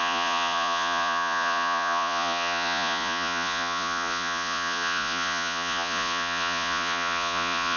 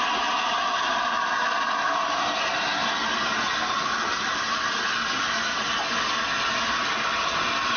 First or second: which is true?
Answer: second